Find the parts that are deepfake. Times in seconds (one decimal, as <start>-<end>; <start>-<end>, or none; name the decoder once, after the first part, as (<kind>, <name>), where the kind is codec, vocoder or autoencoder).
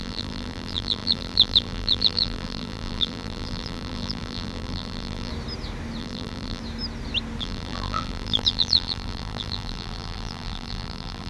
0.0-5.3 (vocoder, BigVGAN v2); 6.0-6.6; 7.4-11.3